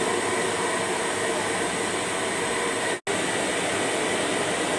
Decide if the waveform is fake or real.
real